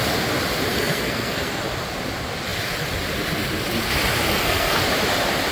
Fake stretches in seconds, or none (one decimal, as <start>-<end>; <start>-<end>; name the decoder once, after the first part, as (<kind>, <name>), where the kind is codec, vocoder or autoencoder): 0.7-1.6 (codec, SNAC); 4.3-4.8